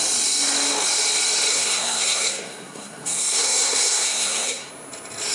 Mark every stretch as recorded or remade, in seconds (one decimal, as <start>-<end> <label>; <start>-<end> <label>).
0.0-1.5 recorded; 1.5-4.7 remade; 4.7-5.3 recorded